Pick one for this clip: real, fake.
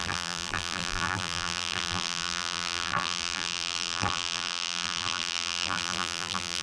fake